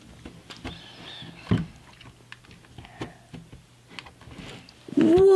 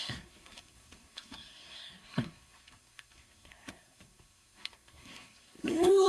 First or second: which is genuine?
first